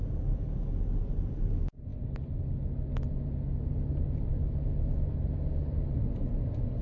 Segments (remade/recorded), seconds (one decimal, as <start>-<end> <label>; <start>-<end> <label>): 0.0-6.8 recorded